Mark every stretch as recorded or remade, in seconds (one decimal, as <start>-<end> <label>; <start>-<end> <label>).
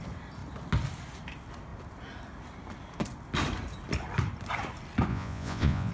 0.0-5.1 recorded; 5.1-5.9 remade